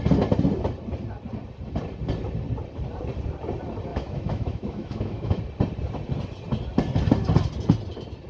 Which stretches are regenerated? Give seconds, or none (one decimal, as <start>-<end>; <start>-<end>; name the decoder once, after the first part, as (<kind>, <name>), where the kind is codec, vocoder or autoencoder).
3.9-5.4 (autoencoder, DAC-VAE)